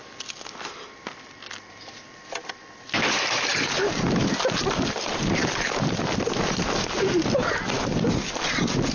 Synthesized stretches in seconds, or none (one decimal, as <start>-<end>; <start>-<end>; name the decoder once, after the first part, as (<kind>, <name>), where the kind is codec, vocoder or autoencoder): none